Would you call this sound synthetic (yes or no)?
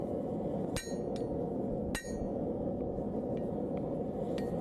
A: no